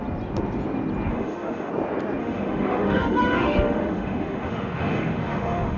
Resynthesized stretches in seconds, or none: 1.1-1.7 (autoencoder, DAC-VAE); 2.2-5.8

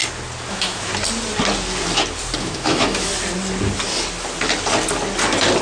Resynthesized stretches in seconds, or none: 0.5-0.9 (autoencoder, DAC-VAE); 2.4-3.1

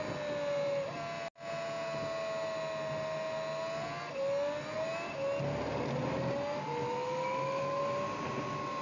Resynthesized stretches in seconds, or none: 6.8-7.8 (autoencoder, DAC-VAE)